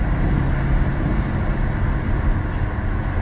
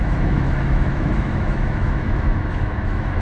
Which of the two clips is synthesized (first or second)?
second